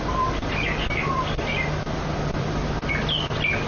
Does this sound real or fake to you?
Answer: real